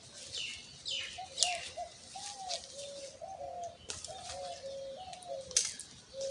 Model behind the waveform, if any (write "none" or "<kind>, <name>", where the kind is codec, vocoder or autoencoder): none